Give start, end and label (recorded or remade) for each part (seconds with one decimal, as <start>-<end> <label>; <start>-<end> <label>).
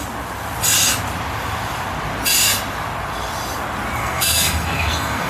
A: 0.0-4.0 recorded; 4.0-5.3 remade